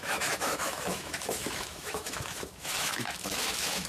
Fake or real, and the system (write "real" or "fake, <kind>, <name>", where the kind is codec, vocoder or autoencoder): fake, autoencoder, DAC-VAE